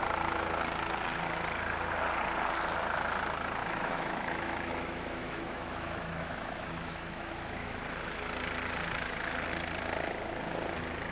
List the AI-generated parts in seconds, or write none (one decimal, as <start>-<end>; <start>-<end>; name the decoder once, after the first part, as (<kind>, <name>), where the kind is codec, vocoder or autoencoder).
3.6-7.8 (autoencoder, DAC-VAE)